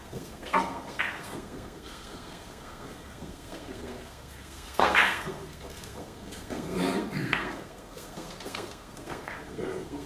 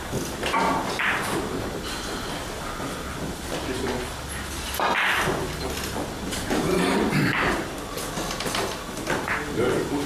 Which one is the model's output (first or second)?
first